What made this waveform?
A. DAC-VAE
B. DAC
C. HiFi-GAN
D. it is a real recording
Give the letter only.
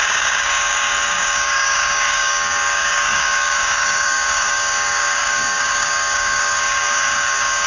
B